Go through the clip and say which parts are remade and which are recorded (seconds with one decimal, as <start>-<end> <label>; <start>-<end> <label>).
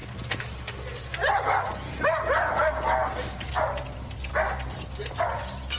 0.0-5.8 recorded